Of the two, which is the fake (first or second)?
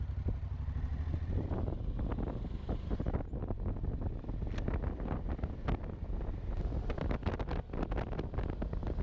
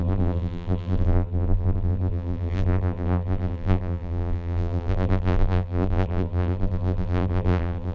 second